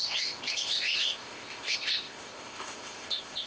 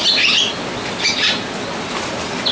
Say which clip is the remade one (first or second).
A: first